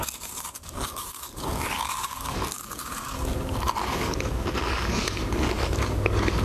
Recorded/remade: remade